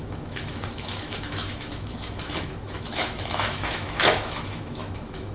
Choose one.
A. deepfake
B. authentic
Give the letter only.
A